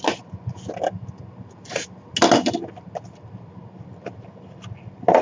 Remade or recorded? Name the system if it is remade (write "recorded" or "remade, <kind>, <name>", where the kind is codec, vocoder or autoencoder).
recorded